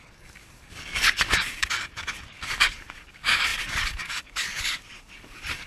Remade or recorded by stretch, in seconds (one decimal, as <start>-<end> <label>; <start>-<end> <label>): 0.0-5.7 remade

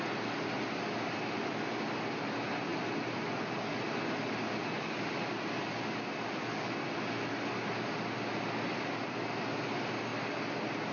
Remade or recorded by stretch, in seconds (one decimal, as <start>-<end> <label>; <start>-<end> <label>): 0.0-10.9 recorded

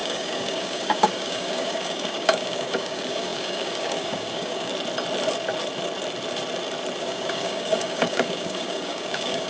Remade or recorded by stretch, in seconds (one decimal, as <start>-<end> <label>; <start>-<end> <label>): 0.0-4.7 remade; 4.7-7.0 recorded; 7.0-9.5 remade

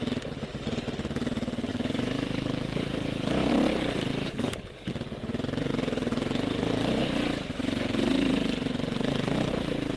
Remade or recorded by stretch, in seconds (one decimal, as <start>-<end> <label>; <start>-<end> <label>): 0.0-1.7 recorded; 1.7-3.5 remade; 3.5-4.2 recorded; 4.2-4.9 remade; 4.9-10.0 recorded